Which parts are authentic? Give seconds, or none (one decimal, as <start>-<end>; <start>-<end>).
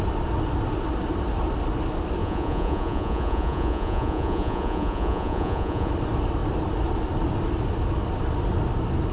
0.0-2.2; 5.9-9.1